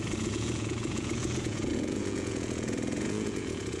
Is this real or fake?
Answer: fake